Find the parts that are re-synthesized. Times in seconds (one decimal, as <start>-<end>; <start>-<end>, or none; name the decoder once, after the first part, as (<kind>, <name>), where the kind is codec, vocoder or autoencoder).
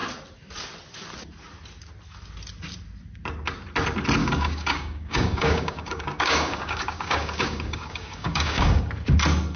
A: 4.2-8.8 (codec, DAC)